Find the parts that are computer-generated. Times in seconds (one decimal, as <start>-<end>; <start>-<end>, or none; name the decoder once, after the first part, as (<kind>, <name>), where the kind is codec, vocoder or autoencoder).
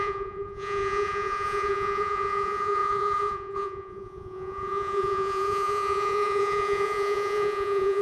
0.0-8.0 (vocoder, Vocos)